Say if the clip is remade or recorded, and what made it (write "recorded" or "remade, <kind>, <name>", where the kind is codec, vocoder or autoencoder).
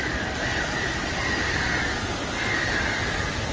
recorded